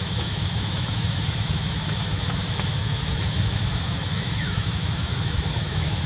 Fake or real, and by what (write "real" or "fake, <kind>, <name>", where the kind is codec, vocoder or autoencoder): fake, autoencoder, DAC-VAE